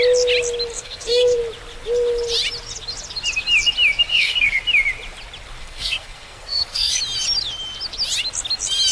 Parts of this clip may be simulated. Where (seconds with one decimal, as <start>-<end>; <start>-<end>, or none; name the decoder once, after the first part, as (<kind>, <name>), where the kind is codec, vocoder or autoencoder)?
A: 0.7-1.4 (codec, SNAC); 4.1-4.6; 5.6-7.0

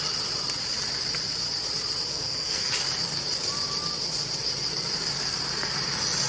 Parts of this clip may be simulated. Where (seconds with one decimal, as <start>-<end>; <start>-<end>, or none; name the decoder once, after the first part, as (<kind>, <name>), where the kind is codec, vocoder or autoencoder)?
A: 2.1-2.7 (codec, SNAC)

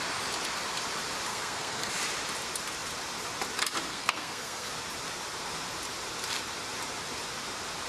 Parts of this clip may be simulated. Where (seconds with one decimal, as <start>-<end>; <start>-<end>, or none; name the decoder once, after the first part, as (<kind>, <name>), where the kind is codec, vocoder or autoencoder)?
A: 1.3-1.9 (codec, SNAC); 3.9-4.7

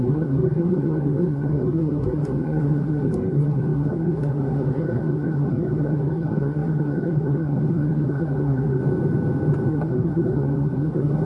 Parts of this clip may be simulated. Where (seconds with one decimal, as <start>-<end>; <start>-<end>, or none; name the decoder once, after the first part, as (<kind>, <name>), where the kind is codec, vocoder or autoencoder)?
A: 0.0-8.8 (codec, SNAC); 9.7-11.3

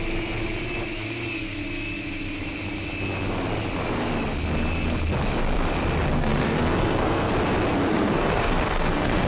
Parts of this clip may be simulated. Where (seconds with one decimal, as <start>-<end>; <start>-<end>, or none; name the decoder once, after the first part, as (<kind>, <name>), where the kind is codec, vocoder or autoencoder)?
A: 6.1-7.3 (codec, SNAC); 7.9-9.3

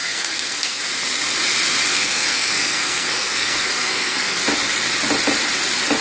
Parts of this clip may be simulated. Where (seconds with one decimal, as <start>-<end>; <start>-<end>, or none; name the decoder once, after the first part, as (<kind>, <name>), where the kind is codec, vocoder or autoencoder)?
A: 0.0-0.8 (codec, SNAC); 1.9-4.4

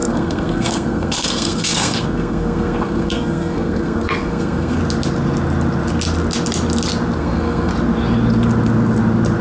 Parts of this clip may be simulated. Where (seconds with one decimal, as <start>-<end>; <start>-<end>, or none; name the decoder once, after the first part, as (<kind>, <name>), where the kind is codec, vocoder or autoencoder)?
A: 0.0-4.8 (codec, SNAC); 7.2-7.7

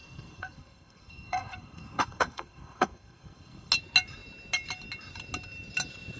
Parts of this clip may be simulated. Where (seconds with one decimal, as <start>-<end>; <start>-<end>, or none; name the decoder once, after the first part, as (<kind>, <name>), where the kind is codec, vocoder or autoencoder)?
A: 0.0-3.7 (codec, SNAC)